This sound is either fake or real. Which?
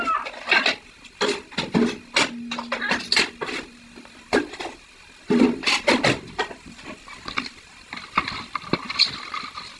real